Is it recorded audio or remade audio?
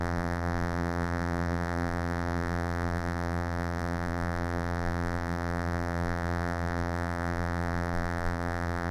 remade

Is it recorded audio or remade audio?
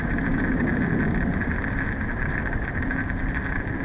recorded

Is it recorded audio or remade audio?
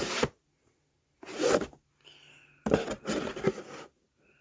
recorded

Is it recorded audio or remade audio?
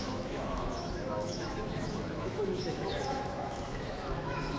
remade